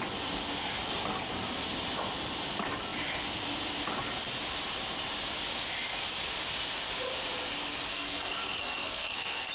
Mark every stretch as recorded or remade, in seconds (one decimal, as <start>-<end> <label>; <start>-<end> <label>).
0.0-7.9 recorded; 7.9-9.5 remade